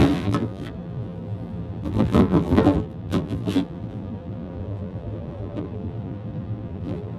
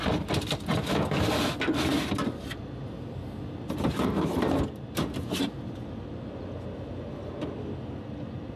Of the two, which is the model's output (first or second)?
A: first